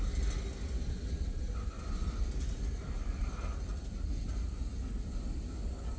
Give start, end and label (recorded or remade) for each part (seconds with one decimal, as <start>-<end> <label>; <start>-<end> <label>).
0.0-6.0 recorded